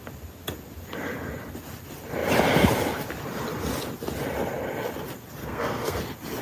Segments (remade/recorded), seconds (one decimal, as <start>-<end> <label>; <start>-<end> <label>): 0.0-5.4 recorded; 5.4-6.0 remade; 6.0-6.4 recorded